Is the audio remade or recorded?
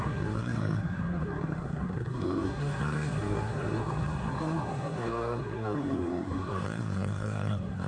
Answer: remade